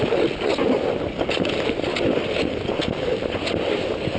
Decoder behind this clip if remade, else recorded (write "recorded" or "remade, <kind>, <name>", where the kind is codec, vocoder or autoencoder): recorded